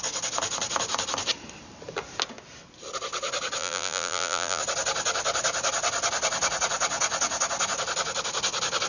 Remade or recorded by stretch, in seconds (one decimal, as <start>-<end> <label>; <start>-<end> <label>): 0.0-3.6 recorded; 3.6-4.6 remade; 4.6-8.9 recorded